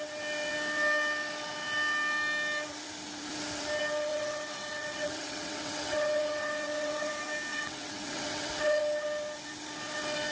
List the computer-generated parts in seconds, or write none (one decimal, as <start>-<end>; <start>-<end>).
4.1-7.1; 7.5-8.8